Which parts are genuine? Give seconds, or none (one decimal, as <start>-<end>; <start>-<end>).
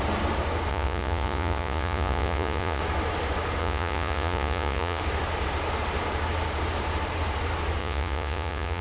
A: 0.0-0.7; 2.8-3.6; 5.0-7.8